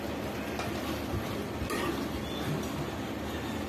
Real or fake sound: real